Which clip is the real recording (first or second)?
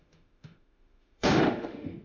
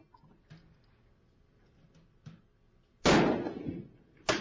second